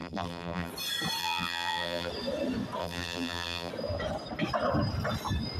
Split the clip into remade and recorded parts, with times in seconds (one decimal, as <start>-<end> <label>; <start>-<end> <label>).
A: 0.0-0.7 remade; 0.7-1.2 recorded; 1.2-2.1 remade; 2.1-2.8 recorded; 2.8-3.7 remade; 3.7-5.6 recorded